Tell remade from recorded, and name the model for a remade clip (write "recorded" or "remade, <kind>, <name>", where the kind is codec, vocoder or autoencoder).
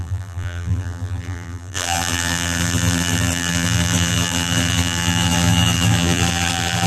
remade, vocoder, BigVGAN v2